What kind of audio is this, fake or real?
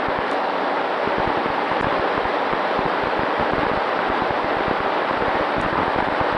fake